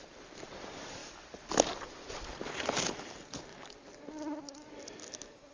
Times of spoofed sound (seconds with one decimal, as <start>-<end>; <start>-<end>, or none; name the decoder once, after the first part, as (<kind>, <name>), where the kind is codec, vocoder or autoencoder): none